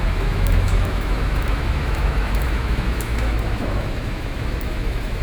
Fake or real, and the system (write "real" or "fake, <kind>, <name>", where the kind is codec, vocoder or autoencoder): fake, autoencoder, DAC-VAE